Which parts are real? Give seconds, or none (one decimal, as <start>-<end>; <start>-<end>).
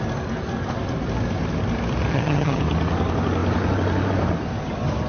0.0-2.1; 2.6-5.1